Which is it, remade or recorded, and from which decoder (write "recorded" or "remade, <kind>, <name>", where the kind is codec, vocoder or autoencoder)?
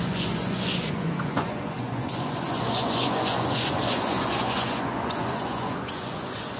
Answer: remade, vocoder, Vocos